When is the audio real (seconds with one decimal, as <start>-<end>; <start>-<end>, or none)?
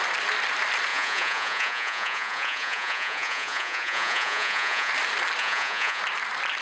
0.0-0.9; 4.9-5.4; 6.0-6.6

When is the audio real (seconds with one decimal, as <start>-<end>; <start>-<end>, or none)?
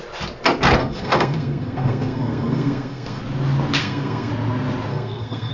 0.0-0.8; 3.2-3.8; 4.3-4.9